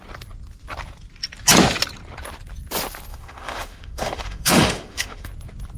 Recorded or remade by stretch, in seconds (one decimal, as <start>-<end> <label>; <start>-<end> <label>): 0.0-3.1 recorded; 3.1-5.3 remade; 5.3-5.8 recorded